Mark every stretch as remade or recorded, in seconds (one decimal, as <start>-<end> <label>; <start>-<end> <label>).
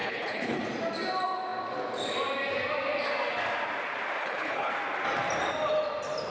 0.0-0.6 remade; 0.6-4.2 recorded; 4.2-4.7 remade; 4.7-6.3 recorded